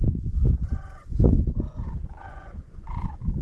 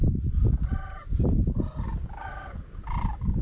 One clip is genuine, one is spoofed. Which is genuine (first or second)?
second